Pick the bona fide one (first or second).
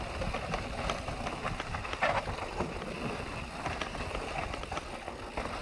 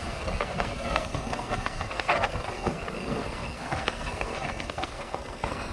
first